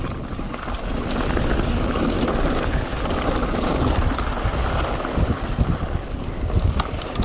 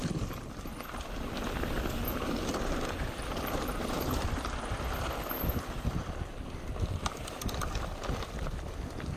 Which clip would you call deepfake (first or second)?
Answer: second